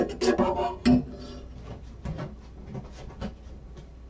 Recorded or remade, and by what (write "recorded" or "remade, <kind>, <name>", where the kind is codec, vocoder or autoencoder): recorded